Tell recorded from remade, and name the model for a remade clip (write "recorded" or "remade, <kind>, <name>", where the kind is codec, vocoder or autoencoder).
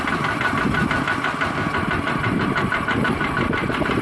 recorded